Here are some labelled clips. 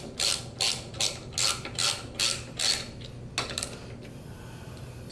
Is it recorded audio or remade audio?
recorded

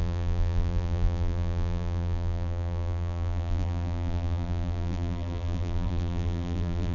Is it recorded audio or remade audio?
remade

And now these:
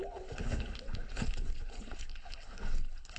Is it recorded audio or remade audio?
remade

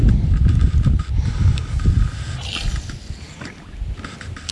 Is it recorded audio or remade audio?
recorded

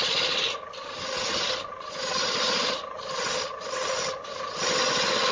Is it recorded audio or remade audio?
recorded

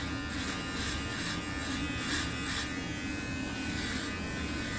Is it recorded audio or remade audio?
recorded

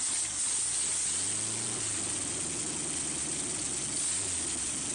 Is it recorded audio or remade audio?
recorded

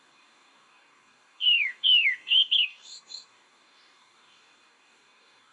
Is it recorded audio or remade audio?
remade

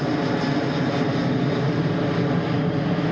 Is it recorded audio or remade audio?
recorded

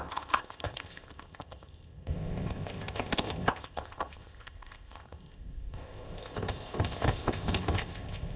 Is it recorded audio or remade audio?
remade